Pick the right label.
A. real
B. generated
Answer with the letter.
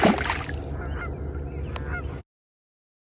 A